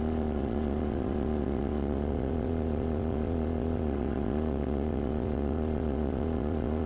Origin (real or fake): fake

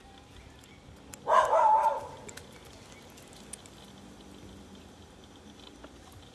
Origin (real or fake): real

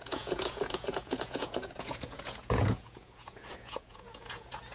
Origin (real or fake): fake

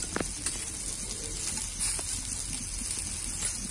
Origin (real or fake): real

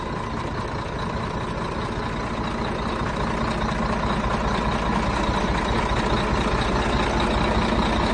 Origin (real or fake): real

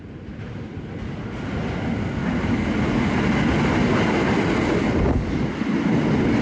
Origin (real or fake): real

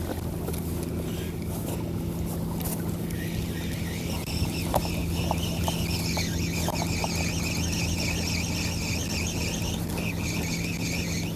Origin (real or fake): real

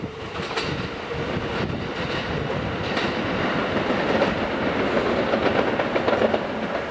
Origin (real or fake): real